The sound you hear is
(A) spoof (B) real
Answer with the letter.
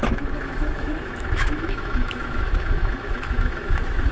A